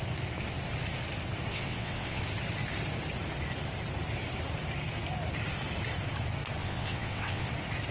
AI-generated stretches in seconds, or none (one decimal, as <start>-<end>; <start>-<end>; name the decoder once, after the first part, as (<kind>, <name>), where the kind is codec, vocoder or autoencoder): 1.5-2.2 (vocoder, WaveNeXt); 6.6-7.5